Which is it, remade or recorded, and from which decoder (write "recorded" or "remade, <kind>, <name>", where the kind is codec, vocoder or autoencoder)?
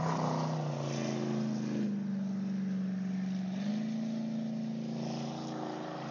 recorded